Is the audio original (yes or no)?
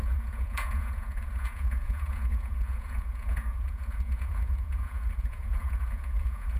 no